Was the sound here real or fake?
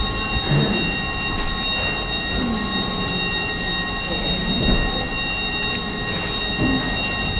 real